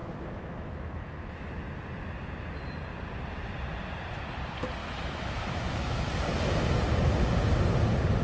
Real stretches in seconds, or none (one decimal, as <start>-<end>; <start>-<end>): 1.5-4.8; 6.1-8.2